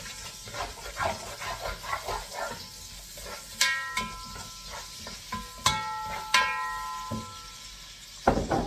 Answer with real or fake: real